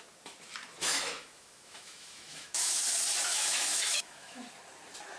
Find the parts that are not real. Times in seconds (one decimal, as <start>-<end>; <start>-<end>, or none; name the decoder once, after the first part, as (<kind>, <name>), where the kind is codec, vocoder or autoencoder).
0.8-2.8 (autoencoder, DAC-VAE); 3.3-4.4